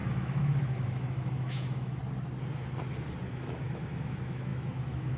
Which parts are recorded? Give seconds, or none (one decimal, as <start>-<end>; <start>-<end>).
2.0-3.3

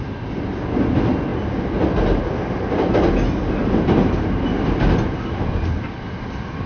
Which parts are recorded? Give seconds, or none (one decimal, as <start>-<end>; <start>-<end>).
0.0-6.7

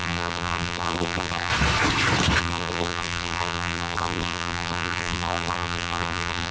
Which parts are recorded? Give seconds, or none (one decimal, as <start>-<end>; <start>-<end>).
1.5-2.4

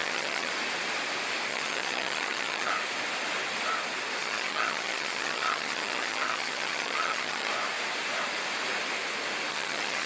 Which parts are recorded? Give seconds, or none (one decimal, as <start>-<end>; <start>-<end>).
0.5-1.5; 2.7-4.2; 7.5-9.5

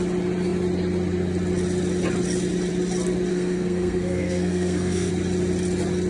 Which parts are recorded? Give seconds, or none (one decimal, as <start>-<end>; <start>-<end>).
0.0-3.3; 5.1-6.1